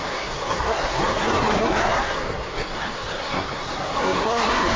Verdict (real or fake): fake